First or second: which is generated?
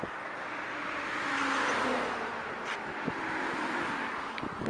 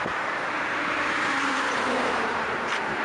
second